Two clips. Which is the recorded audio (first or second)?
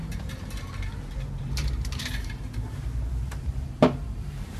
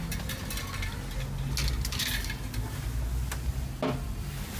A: second